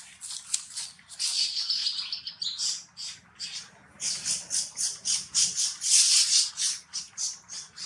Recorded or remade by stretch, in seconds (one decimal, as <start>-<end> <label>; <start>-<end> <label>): 0.0-7.9 recorded